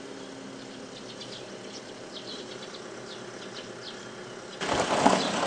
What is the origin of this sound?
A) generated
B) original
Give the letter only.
B